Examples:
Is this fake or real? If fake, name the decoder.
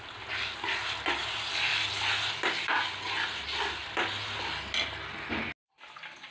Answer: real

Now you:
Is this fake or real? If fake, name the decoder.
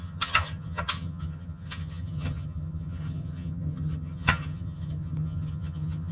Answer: fake, vocoder, HiFi-GAN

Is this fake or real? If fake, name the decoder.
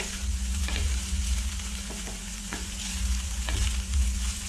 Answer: fake, vocoder, Vocos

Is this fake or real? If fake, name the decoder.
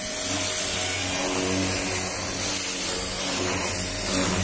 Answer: real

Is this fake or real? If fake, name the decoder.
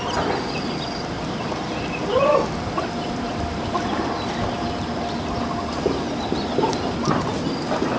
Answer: real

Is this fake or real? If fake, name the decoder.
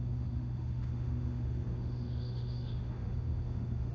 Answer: fake, autoencoder, DAC-VAE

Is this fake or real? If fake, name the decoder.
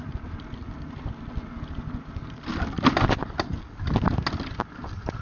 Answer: real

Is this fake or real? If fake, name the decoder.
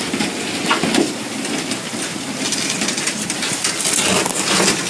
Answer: real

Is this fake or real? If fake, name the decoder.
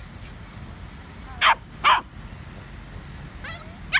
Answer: real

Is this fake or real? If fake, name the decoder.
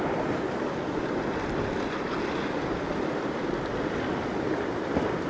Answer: real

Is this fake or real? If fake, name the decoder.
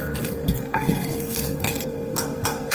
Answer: fake, codec, SNAC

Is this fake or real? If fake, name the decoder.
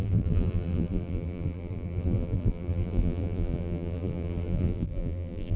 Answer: fake, vocoder, BigVGAN v2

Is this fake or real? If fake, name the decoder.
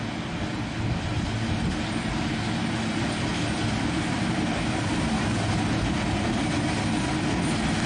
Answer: real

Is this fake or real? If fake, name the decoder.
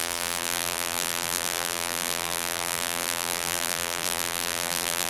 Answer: fake, vocoder, BigVGAN v2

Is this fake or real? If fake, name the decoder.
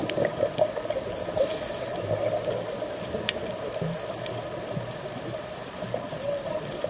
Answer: fake, vocoder, BigVGAN v2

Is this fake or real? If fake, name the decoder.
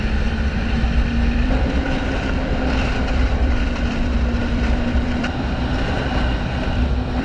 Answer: fake, vocoder, BigVGAN v2